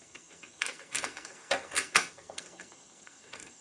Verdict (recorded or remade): remade